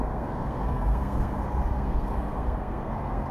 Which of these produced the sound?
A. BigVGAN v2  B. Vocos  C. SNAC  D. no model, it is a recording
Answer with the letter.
C